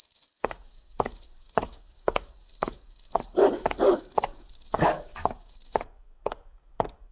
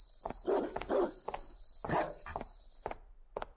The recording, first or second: second